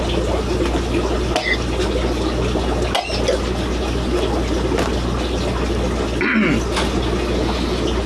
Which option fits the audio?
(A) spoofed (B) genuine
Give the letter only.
B